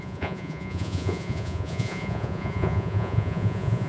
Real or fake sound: fake